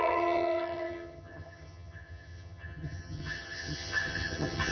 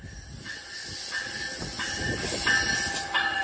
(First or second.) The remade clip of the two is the first